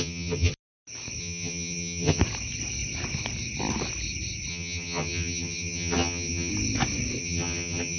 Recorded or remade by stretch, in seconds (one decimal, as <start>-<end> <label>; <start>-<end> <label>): 0.0-0.5 remade; 0.5-1.2 recorded; 1.2-2.2 remade; 2.2-4.5 recorded; 4.5-6.5 remade; 6.5-7.2 recorded; 7.2-8.0 remade